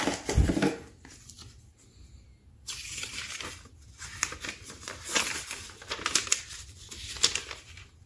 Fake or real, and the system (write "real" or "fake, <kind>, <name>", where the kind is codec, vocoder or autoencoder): real